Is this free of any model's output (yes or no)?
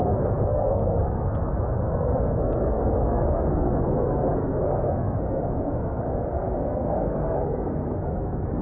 no